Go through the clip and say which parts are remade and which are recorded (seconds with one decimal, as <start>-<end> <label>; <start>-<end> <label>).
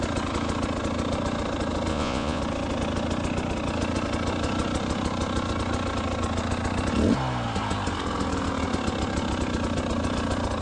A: 0.0-1.9 recorded; 1.9-2.4 remade; 2.4-10.6 recorded